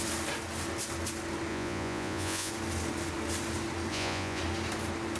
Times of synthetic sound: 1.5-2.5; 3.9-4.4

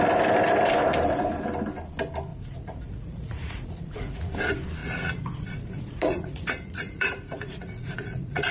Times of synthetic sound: 2.3-4.3; 4.8-8.5

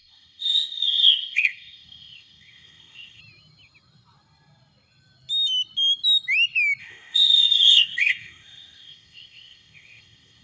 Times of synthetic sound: 0.0-3.2; 6.8-10.4

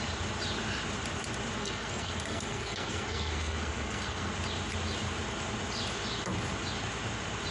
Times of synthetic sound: 1.6-4.3

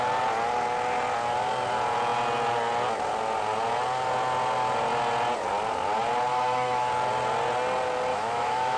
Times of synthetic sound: 6.3-6.9; 8.1-8.8

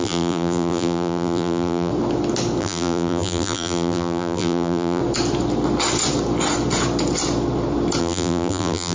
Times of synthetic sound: 0.0-1.9; 2.6-5.0; 8.0-8.9

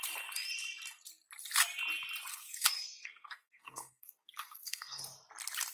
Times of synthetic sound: 2.3-5.0

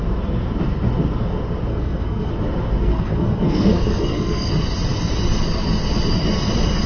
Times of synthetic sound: 1.7-2.3; 2.8-4.5